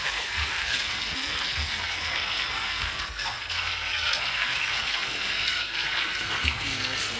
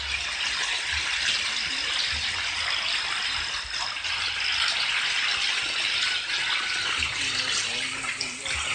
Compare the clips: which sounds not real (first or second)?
first